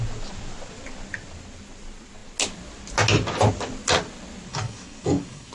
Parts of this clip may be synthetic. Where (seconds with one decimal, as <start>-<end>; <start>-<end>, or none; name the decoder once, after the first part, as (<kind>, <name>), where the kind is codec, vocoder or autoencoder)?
4.5-5.5 (codec, DAC)